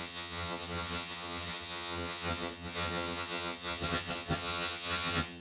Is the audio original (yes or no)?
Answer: no